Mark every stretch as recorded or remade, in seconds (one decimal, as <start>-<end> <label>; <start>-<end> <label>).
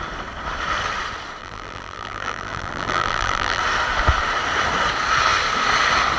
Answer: 0.0-1.4 recorded; 1.4-3.6 remade; 3.6-6.2 recorded